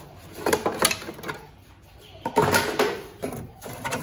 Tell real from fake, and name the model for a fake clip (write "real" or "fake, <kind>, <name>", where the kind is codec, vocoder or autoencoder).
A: real